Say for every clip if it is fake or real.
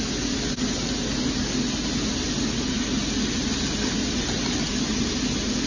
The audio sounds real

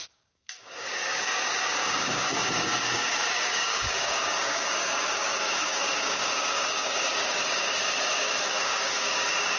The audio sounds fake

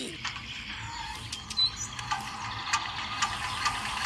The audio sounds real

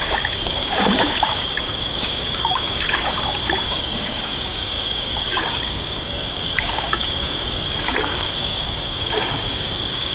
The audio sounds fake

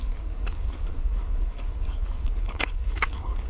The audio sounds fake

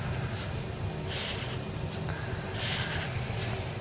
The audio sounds real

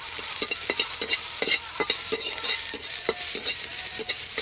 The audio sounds real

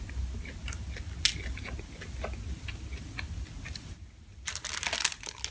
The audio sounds real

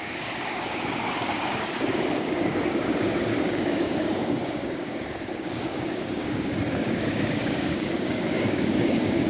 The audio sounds fake